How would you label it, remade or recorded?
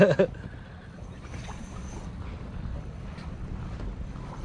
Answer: recorded